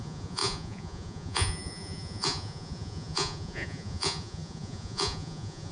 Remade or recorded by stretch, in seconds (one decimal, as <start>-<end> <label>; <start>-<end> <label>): 0.0-5.7 remade